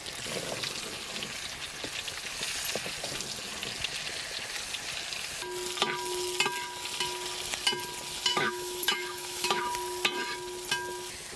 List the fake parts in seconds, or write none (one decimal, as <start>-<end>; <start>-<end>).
8.3-9.6